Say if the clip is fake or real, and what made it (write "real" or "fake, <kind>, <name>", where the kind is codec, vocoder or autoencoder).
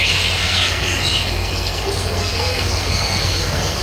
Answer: fake, codec, SNAC